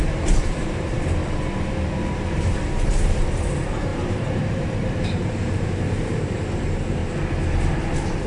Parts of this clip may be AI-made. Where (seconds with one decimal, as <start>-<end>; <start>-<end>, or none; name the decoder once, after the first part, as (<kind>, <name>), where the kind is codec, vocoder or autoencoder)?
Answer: 0.0-1.2 (vocoder, BigVGAN v2); 2.1-7.0; 7.7-8.3